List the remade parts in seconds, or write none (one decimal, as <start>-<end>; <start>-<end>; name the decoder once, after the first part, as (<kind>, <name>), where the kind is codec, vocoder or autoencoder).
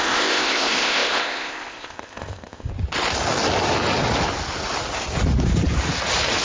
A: 0.0-2.7 (codec, ZipCodec)